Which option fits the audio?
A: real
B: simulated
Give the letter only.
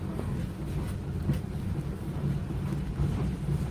A